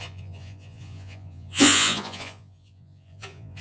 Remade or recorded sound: remade